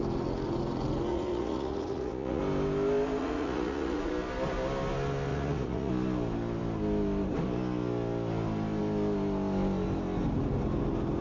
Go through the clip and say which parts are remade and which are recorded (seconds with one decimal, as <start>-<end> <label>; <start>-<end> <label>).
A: 0.0-1.1 recorded; 1.1-2.4 remade; 2.4-3.2 recorded; 3.2-4.1 remade; 4.1-5.3 recorded; 5.3-5.9 remade; 5.9-11.2 recorded